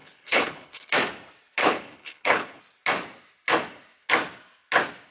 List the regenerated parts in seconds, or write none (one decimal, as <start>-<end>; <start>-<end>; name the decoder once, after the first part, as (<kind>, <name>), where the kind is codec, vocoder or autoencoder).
0.0-0.9 (codec, HILCodec); 1.6-2.6